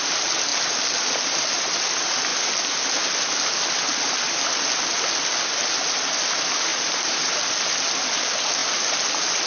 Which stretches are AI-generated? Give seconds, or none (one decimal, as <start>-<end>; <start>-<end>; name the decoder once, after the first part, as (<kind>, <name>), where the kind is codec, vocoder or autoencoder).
6.7-7.3 (vocoder, BigVGAN v2); 8.6-9.5